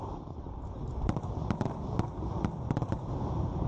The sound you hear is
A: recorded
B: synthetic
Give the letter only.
A